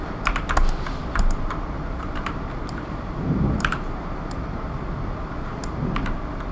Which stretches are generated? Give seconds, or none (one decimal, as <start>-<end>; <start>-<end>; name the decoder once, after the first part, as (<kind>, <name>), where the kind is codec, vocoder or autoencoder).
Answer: 1.0-4.6 (vocoder, BigVGAN v2)